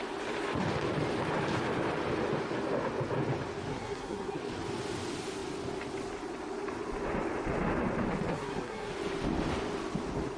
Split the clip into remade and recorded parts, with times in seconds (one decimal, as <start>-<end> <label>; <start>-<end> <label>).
0.0-3.7 recorded; 3.7-4.4 remade; 4.4-8.3 recorded; 8.3-8.9 remade; 8.9-10.4 recorded